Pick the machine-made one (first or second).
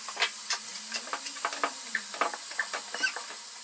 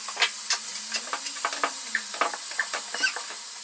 first